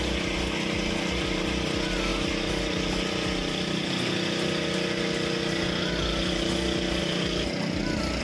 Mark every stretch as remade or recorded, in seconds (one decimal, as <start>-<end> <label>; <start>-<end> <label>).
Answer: 0.0-8.2 recorded